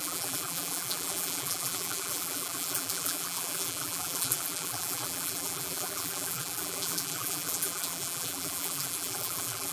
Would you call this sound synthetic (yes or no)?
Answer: yes